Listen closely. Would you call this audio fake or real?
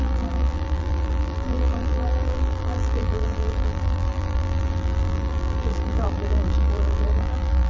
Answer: fake